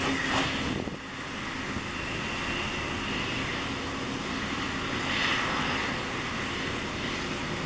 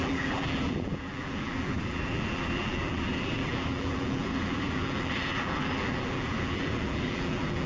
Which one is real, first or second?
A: first